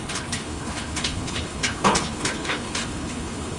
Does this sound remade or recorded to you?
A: remade